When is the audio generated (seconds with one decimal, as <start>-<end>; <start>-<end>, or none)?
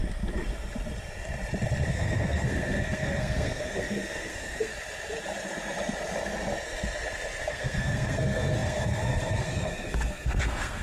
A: 1.9-4.7; 7.5-10.8